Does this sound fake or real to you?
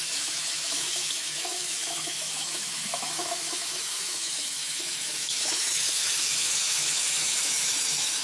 fake